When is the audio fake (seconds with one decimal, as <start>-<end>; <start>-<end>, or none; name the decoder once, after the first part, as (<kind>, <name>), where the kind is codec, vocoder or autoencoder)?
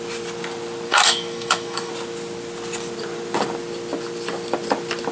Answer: 0.9-1.9 (autoencoder, DAC-VAE)